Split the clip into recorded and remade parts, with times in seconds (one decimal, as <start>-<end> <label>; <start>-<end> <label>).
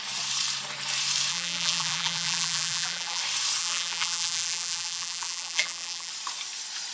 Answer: 0.0-1.3 recorded; 1.3-3.2 remade; 3.2-3.6 recorded; 3.6-6.1 remade; 6.1-6.9 recorded